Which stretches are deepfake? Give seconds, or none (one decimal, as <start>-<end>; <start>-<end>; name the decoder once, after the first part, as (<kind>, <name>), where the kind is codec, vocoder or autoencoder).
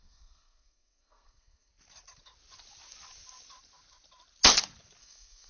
0.0-1.7 (codec, SNAC); 5.0-5.5